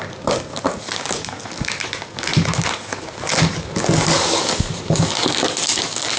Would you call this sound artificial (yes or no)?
yes